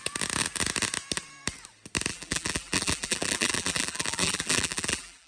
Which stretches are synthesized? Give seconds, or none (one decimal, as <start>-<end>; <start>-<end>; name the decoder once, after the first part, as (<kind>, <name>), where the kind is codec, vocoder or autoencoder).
2.1-5.3 (vocoder, BigVGAN v2)